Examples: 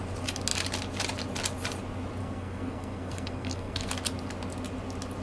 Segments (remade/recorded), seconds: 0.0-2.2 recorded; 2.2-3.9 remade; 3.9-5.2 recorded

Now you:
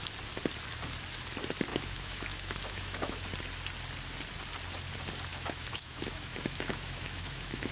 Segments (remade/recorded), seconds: 0.0-1.7 recorded; 1.7-3.3 remade; 3.3-5.3 recorded; 5.3-7.7 remade

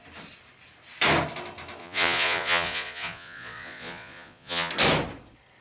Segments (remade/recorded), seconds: 0.0-1.8 recorded; 1.8-4.7 remade; 4.7-5.6 recorded

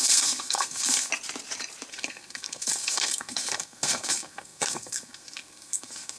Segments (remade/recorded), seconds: 0.0-1.1 remade; 1.1-1.9 recorded; 1.9-6.2 remade

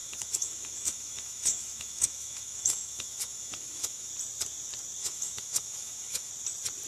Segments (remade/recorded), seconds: 0.0-4.1 remade; 4.1-5.0 recorded; 5.0-6.3 remade; 6.3-6.9 recorded

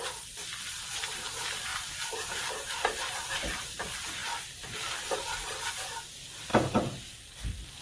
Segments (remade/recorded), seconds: 0.0-1.7 recorded; 1.7-3.8 remade; 3.8-4.2 recorded; 4.2-5.7 remade; 5.7-6.5 recorded; 6.5-7.3 remade; 7.3-7.8 recorded

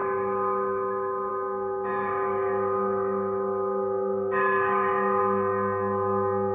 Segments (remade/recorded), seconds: 0.0-1.3 remade; 1.3-1.9 recorded; 1.9-5.2 remade; 5.2-6.5 recorded